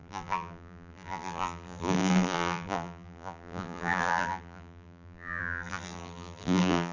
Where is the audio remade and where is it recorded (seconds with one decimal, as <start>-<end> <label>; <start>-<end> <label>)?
0.0-6.9 remade